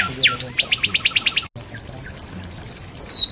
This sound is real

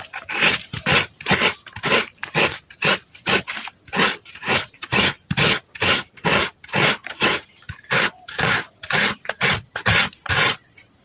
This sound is real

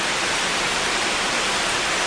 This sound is fake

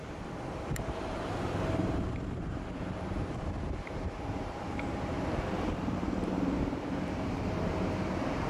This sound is fake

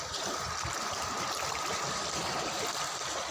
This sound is fake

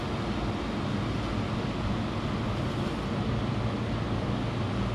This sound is real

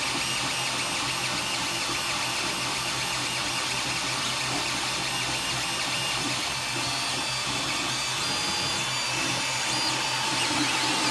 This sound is real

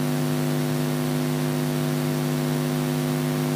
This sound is real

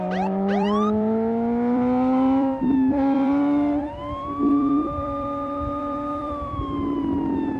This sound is fake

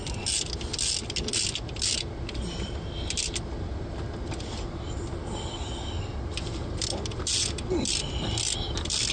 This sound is real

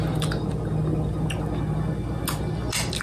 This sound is real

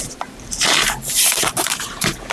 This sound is fake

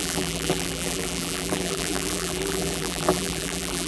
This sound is fake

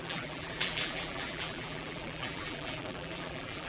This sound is fake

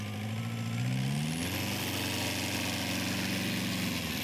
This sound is real